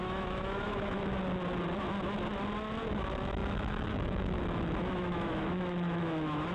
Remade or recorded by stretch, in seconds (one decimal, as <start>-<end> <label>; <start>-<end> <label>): 0.0-1.1 remade; 1.1-2.8 recorded; 2.8-6.5 remade